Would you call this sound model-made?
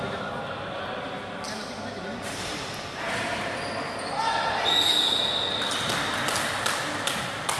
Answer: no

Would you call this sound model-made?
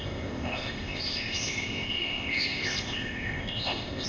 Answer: yes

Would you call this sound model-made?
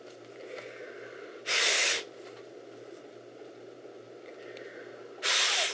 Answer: no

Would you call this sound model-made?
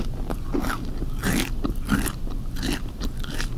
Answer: no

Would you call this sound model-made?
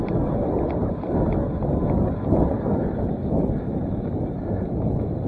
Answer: no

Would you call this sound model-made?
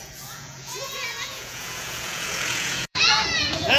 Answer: yes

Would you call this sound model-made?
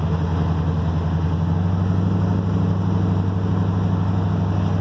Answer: no